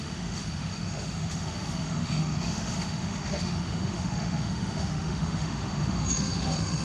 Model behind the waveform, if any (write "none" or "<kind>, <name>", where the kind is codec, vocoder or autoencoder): autoencoder, DAC-VAE